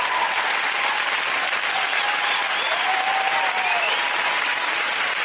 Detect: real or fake fake